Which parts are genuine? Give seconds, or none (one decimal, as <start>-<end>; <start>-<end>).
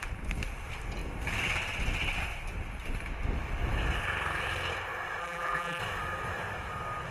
0.0-5.2; 5.8-7.1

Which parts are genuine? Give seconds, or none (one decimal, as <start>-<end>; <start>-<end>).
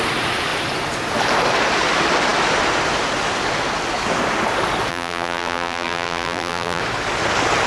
0.0-4.9; 6.8-7.7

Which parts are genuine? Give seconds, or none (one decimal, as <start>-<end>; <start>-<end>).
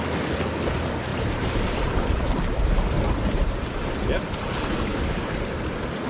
0.0-1.1; 4.0-4.9; 5.4-6.1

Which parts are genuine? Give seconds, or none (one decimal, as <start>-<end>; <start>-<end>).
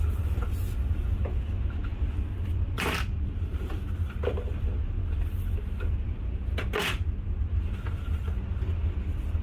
0.0-1.9; 3.9-5.0; 7.1-9.4